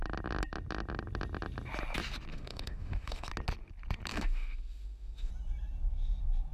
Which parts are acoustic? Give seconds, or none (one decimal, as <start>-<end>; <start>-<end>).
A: 0.0-2.3; 3.3-4.1; 5.3-6.5